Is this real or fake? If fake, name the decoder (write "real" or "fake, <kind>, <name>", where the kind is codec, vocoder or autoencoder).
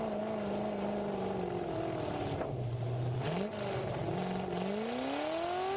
real